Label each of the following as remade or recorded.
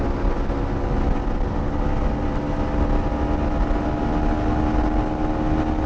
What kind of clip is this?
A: recorded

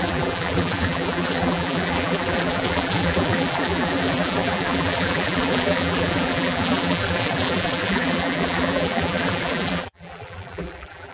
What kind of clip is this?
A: remade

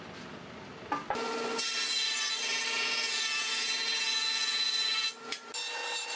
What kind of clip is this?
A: recorded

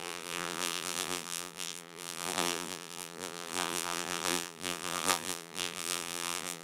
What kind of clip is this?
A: remade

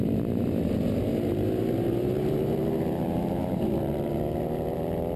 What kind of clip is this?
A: remade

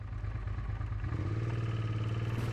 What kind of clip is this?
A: recorded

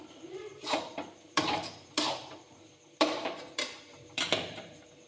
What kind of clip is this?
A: remade